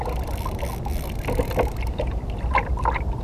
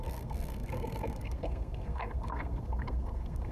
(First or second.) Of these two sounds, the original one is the first